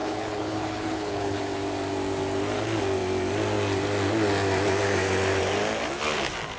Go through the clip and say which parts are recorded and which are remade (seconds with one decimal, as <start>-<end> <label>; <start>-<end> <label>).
0.0-1.4 remade; 1.4-6.6 recorded